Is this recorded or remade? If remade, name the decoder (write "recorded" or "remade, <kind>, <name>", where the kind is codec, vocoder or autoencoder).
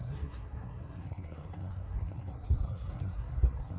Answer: remade, codec, SNAC